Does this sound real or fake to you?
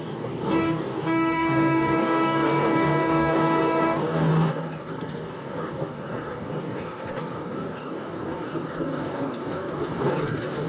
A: fake